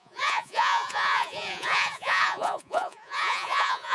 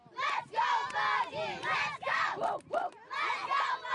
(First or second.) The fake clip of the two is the first